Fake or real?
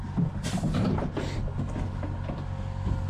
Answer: real